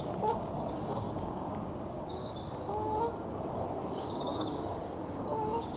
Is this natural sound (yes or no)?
no